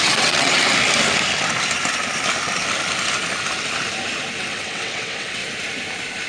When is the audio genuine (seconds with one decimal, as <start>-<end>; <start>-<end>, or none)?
0.6-4.4; 5.4-6.3